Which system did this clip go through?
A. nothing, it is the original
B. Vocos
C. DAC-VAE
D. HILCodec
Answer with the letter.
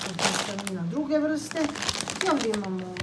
A